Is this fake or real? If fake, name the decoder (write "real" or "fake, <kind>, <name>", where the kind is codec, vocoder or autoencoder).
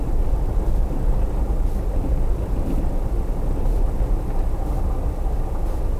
real